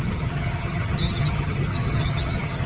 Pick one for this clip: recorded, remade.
remade